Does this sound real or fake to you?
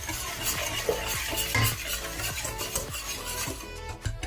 real